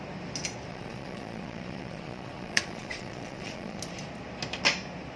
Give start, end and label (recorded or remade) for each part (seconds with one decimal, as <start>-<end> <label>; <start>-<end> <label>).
0.0-0.7 recorded; 0.7-3.8 remade; 3.8-5.2 recorded